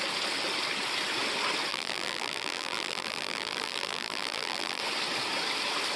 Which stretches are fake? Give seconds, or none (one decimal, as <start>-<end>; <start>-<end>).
1.7-4.8